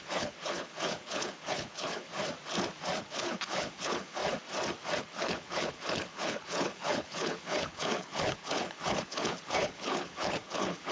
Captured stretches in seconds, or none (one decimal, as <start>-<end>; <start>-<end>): 2.1-3.0; 4.2-5.0